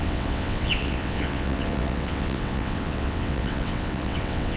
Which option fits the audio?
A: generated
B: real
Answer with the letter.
A